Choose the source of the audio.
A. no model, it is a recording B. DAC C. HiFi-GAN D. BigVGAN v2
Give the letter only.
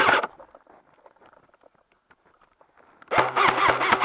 A